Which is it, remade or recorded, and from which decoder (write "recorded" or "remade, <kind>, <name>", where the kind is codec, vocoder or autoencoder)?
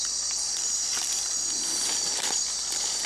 remade, vocoder, BigVGAN v2